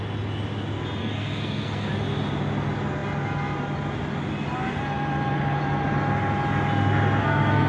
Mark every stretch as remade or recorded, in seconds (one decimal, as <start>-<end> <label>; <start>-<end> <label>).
0.0-1.0 recorded; 1.0-1.9 remade; 1.9-7.2 recorded; 7.2-7.7 remade